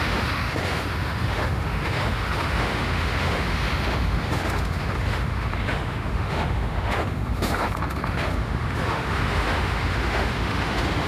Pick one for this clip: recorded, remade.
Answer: remade